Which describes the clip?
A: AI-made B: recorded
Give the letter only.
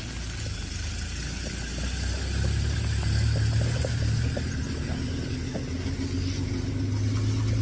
B